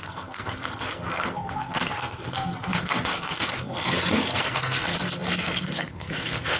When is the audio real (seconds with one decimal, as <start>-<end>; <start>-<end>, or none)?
none